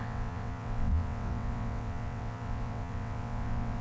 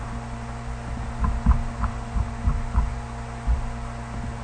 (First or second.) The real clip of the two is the second